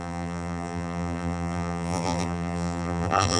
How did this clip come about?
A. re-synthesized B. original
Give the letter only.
A